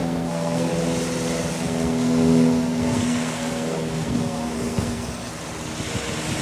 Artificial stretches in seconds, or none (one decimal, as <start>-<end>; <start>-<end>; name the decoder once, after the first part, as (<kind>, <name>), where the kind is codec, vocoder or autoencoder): 0.0-0.7 (codec, SNAC); 1.5-5.3